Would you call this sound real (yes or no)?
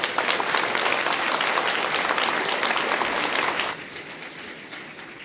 yes